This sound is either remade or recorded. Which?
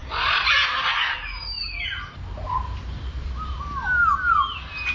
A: recorded